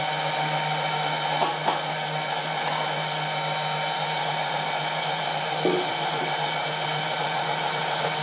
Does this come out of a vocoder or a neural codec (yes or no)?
no